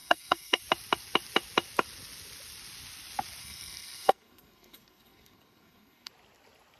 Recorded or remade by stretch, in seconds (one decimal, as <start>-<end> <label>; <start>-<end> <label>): 0.0-0.6 remade; 0.6-3.4 recorded; 3.4-6.1 remade; 6.1-6.8 recorded